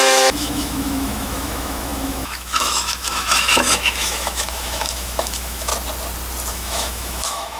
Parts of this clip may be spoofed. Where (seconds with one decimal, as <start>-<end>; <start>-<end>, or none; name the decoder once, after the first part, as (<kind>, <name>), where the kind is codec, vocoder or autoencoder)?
0.0-5.7 (autoencoder, DAC-VAE); 6.5-7.6